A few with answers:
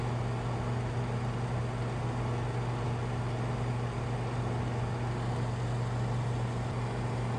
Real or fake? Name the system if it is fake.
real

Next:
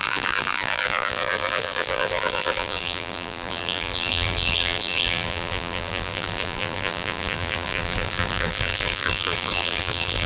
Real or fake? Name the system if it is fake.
fake, vocoder, BigVGAN v2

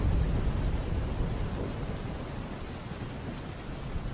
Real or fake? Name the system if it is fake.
real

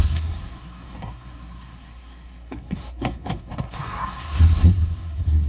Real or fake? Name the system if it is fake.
fake, codec, SNAC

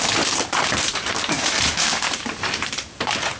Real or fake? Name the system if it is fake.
fake, vocoder, BigVGAN v2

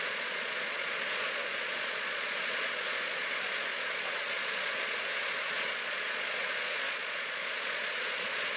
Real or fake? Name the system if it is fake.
fake, vocoder, Vocos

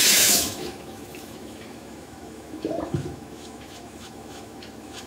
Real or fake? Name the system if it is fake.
fake, autoencoder, DAC-VAE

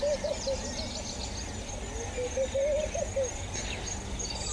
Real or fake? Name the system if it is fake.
real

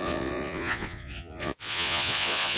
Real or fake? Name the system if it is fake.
fake, vocoder, Vocos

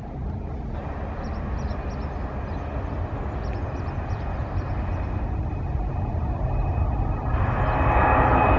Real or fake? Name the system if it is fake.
real